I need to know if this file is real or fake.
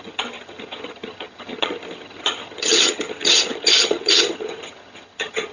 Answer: fake